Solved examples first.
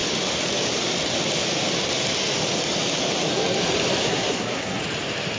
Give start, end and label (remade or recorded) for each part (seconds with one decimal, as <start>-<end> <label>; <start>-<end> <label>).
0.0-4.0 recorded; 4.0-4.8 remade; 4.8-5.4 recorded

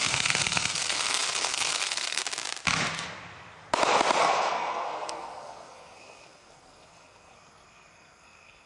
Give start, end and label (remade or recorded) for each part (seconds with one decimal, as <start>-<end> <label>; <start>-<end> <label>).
0.0-2.2 remade; 2.2-4.2 recorded; 4.2-8.7 remade

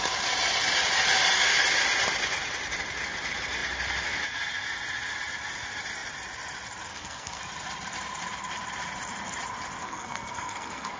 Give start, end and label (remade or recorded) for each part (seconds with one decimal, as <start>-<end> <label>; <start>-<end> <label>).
0.0-6.9 recorded; 6.9-7.4 remade; 7.4-9.8 recorded; 9.8-11.0 remade

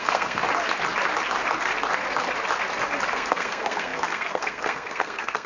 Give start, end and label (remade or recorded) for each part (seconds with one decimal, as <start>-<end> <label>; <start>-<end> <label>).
0.0-0.4 remade; 0.4-3.1 recorded; 3.1-5.5 remade

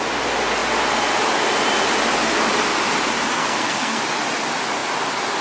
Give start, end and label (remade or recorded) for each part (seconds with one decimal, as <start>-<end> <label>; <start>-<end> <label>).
0.0-3.3 recorded; 3.3-4.0 remade; 4.0-5.4 recorded

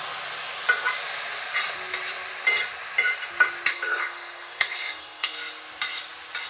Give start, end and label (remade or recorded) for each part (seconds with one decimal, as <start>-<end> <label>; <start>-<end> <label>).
0.0-3.7 recorded; 3.7-5.4 remade; 5.4-6.5 recorded